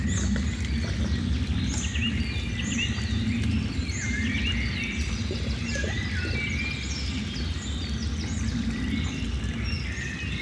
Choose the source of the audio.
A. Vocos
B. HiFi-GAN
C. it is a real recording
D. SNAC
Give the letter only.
C